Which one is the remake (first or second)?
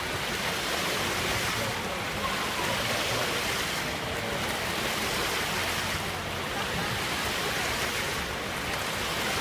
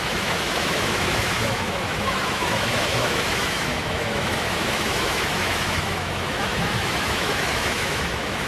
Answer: second